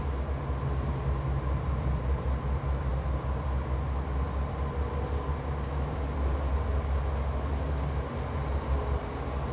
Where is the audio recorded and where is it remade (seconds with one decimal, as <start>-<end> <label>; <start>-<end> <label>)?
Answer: 0.0-9.5 recorded